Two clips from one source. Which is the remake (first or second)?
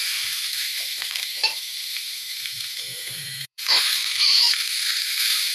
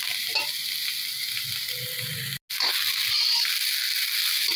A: first